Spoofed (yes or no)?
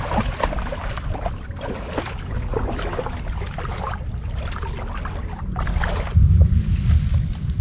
no